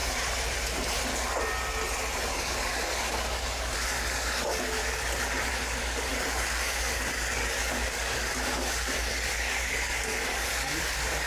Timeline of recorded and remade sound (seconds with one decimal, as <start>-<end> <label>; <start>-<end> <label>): 0.0-2.3 recorded; 2.3-4.8 remade; 4.8-5.5 recorded; 5.5-11.3 remade